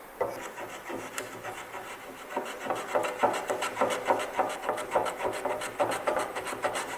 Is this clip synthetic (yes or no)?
no